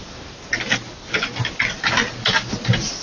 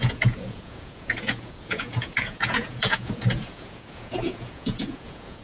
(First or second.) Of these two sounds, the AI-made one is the second